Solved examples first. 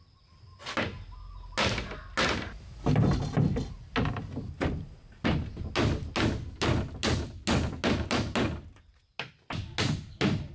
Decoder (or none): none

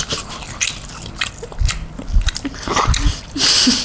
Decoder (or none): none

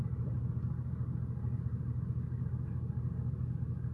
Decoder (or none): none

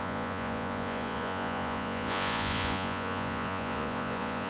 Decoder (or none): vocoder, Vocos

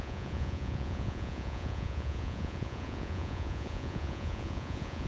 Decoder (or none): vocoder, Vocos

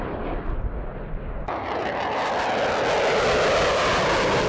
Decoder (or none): none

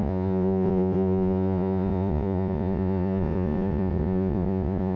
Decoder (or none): vocoder, Vocos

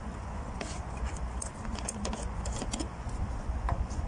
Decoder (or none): vocoder, Vocos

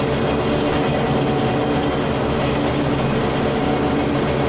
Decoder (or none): none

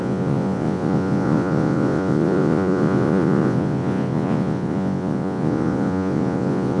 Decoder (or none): vocoder, Vocos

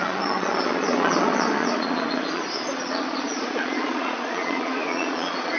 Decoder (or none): vocoder, Vocos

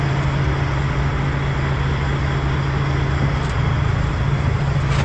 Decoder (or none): none